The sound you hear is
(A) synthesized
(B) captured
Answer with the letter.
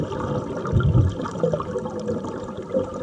B